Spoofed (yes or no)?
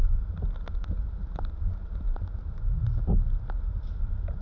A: no